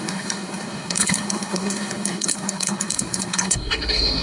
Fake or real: fake